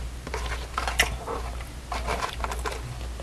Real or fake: real